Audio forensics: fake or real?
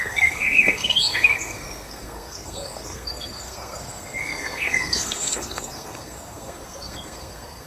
fake